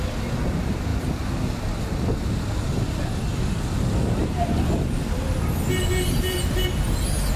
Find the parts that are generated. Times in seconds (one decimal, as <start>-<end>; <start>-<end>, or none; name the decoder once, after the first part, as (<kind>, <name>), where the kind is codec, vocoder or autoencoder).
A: 3.8-4.5 (vocoder, BigVGAN v2)

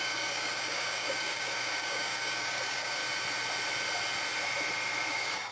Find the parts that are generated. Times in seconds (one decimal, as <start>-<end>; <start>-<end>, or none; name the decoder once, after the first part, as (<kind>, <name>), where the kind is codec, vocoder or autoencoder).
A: 0.0-3.0 (codec, DAC); 5.1-5.5

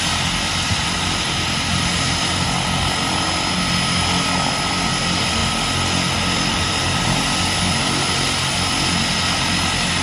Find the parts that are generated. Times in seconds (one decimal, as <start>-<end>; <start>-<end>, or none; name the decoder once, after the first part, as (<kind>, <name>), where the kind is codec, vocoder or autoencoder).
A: none

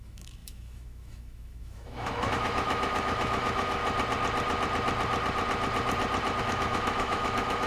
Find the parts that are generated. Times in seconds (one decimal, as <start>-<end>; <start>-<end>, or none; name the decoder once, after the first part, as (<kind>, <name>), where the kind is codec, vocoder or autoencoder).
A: 0.0-3.8 (autoencoder, DAC-VAE); 6.4-7.7

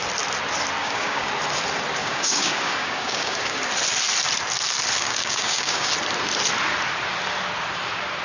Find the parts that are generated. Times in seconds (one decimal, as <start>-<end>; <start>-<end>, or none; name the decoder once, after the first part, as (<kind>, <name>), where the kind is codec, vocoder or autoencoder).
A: 0.8-1.3 (codec, DAC); 2.0-3.6; 5.0-5.9

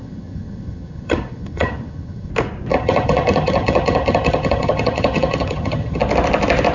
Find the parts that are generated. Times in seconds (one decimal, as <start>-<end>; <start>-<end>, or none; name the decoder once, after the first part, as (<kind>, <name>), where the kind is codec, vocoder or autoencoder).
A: 0.0-2.3 (vocoder, HiFi-GAN); 2.7-6.0

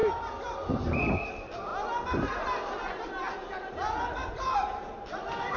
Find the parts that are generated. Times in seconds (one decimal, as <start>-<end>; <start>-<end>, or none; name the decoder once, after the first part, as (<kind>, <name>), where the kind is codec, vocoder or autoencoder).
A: none